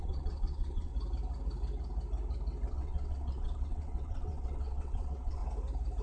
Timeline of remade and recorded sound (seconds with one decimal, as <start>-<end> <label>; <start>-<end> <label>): 0.0-0.9 remade; 0.9-2.7 recorded; 2.7-5.4 remade; 5.4-6.0 recorded